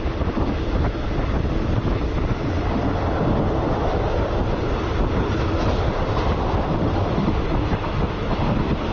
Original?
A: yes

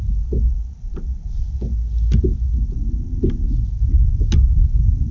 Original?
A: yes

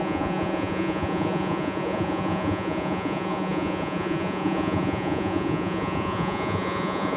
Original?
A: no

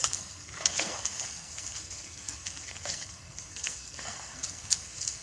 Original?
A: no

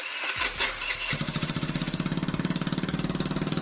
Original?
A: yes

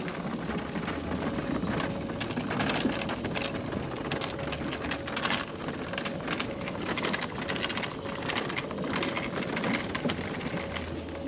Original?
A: yes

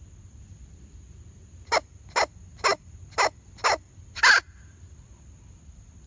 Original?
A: yes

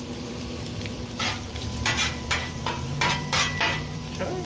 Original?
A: no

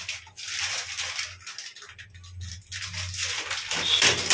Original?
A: yes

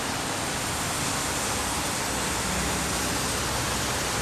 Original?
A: yes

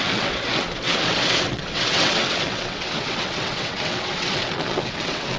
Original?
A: no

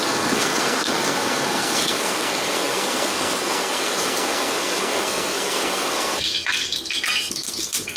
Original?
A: no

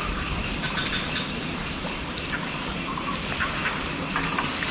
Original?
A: yes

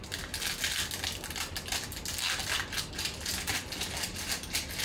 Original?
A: yes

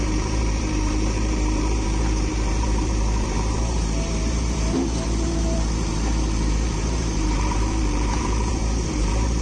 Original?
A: no